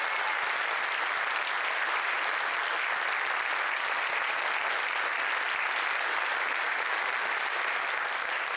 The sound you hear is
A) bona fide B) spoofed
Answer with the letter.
A